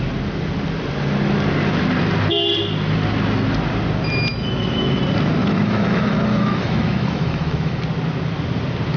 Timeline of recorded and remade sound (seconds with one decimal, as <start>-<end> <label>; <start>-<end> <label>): 0.0-4.3 recorded; 4.3-5.0 remade; 5.0-5.4 recorded; 5.4-7.8 remade; 7.8-9.0 recorded